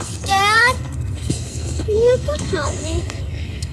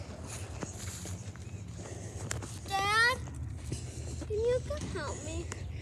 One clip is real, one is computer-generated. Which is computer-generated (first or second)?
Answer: first